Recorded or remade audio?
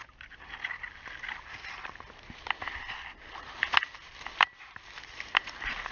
recorded